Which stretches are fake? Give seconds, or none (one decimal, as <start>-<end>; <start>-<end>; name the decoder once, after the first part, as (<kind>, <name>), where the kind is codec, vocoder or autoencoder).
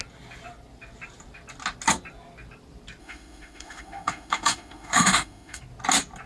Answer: 3.0-5.6 (autoencoder, DAC-VAE)